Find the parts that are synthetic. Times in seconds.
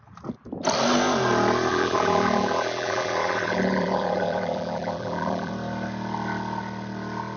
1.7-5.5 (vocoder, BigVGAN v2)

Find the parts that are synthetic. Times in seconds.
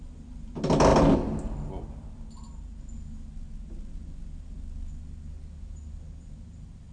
none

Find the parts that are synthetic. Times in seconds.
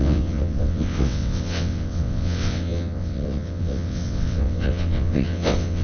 0.0-5.8 (vocoder, WaveNeXt)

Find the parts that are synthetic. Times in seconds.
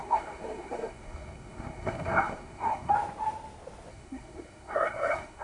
0.0-2.9 (codec, SNAC); 3.9-5.4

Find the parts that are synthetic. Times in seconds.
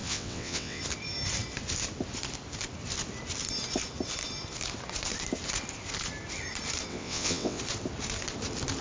0.0-0.8 (vocoder, WaveNeXt); 6.9-7.6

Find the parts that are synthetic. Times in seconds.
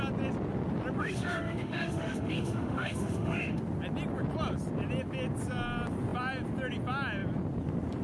1.0-3.6 (autoencoder, DAC-VAE)